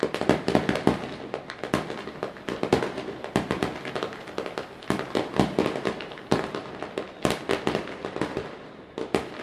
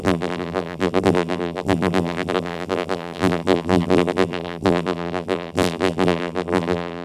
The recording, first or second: first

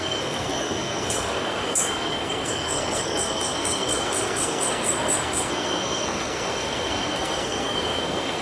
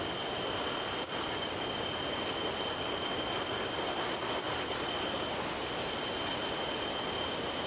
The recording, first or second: second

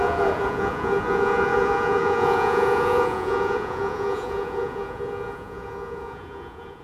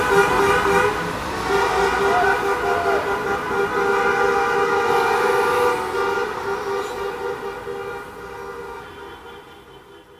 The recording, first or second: second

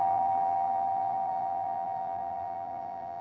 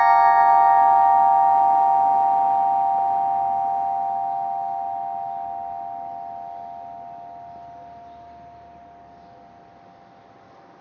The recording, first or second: second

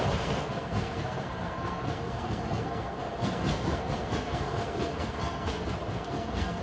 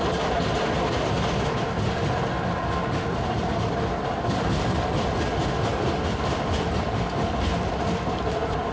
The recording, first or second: second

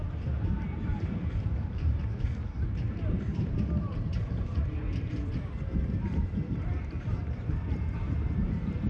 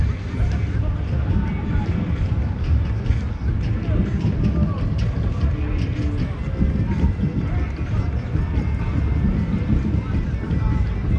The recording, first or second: second